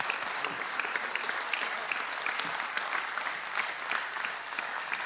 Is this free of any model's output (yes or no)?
yes